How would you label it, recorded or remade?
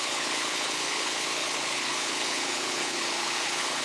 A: remade